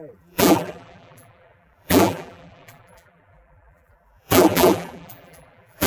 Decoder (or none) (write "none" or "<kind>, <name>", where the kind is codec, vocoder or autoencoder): vocoder, BigVGAN v2